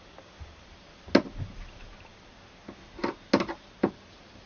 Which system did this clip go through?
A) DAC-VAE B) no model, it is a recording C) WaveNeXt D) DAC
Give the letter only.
B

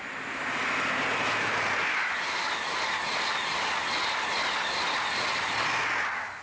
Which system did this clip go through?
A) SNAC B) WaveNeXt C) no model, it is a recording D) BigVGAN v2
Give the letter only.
C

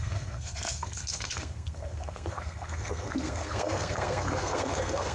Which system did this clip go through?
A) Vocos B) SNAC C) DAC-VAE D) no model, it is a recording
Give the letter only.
B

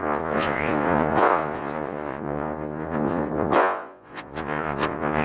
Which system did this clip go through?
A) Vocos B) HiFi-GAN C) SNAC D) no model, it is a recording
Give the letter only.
A